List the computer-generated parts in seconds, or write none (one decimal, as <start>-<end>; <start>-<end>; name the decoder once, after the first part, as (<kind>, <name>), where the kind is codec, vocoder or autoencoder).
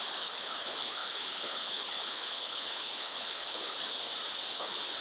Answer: 0.0-4.0 (codec, HILCodec); 4.5-5.0